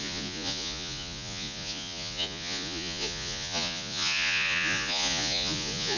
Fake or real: fake